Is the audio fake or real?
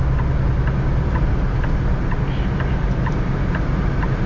real